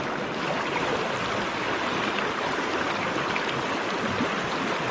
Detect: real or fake real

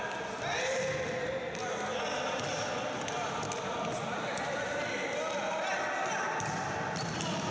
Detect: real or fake real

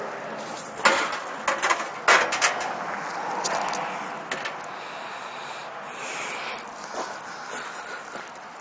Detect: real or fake real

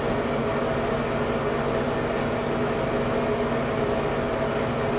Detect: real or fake real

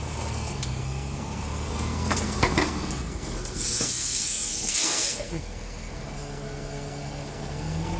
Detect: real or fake fake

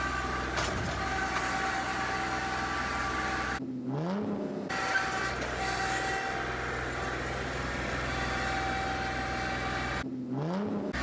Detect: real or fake real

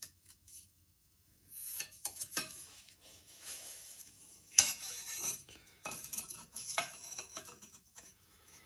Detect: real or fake fake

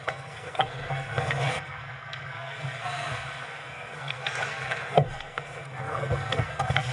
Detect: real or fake fake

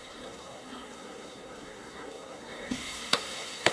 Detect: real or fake fake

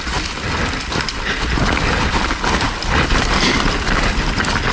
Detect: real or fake real